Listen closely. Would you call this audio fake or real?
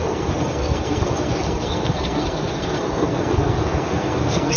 fake